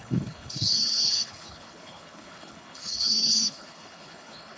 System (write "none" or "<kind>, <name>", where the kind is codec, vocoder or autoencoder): codec, HILCodec